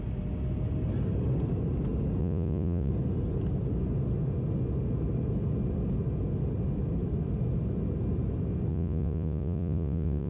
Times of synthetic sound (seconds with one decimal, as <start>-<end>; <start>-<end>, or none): 2.2-2.9; 8.7-10.3